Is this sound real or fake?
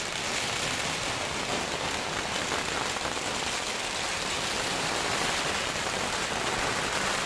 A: real